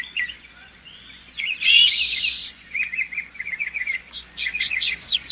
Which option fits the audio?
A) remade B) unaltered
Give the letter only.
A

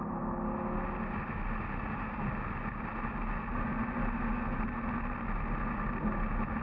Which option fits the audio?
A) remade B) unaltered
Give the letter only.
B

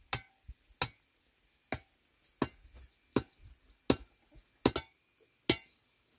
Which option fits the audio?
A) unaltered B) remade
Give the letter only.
A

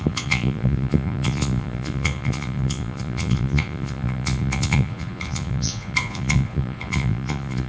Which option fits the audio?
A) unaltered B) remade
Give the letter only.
B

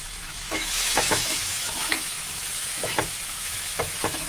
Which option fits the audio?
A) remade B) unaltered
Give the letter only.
A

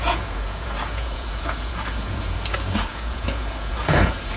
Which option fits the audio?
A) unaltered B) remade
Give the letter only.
B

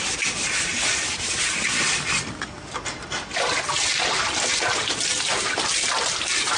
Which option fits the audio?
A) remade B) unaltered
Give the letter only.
B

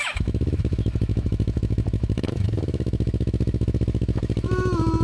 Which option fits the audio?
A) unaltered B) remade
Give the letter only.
B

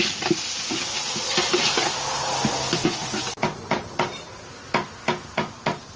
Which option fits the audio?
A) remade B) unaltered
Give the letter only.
B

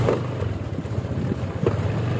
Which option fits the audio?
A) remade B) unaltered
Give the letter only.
B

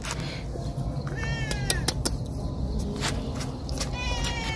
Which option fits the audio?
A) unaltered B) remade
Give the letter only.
A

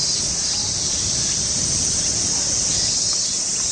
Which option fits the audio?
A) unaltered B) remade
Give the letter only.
A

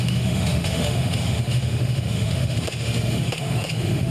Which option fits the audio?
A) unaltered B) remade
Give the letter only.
B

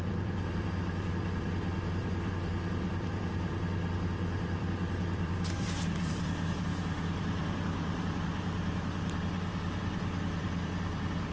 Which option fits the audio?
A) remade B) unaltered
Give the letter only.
A